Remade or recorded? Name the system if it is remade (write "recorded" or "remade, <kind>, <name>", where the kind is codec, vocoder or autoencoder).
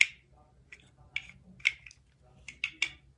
recorded